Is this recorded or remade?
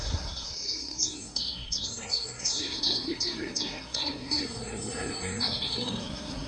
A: remade